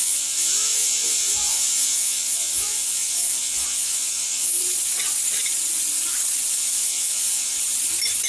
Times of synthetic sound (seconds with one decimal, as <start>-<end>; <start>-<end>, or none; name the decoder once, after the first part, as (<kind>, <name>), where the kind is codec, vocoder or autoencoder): 0.0-4.6 (vocoder, Vocos); 6.5-7.6